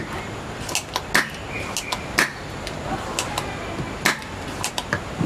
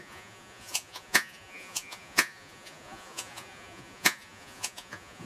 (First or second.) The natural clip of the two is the first